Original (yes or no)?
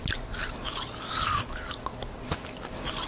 yes